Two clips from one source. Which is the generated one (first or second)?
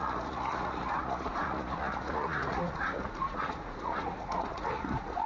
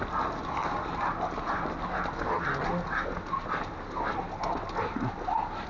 first